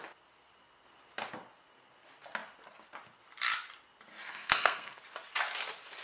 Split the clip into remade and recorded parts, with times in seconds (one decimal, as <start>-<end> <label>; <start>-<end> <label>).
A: 0.0-4.3 recorded; 4.3-5.0 remade; 5.0-6.0 recorded